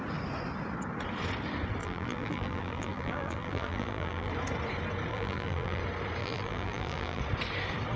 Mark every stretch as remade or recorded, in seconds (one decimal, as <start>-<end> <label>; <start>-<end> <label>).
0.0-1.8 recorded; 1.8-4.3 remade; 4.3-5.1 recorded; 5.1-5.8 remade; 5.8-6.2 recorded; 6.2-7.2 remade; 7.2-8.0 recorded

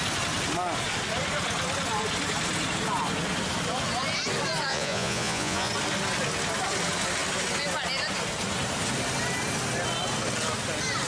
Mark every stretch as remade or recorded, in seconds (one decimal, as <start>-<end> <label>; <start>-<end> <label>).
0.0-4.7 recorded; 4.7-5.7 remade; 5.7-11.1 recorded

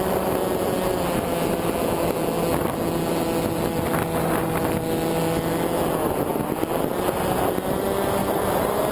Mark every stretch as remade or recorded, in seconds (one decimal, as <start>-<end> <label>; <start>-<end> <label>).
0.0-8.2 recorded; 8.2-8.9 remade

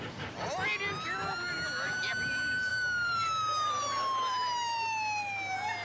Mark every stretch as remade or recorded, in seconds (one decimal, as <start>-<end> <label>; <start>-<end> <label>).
0.0-2.7 recorded; 2.7-3.7 remade; 3.7-5.8 recorded

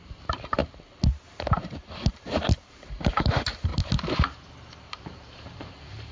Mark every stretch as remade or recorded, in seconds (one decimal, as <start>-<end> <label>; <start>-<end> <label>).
0.0-0.6 remade; 0.6-2.6 recorded; 2.6-3.7 remade; 3.7-4.8 recorded; 4.8-6.1 remade

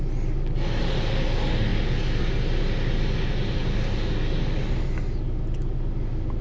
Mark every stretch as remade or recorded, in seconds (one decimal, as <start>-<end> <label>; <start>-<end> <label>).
0.0-6.4 recorded